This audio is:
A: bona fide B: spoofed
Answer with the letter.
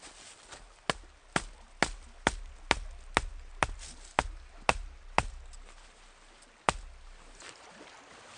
A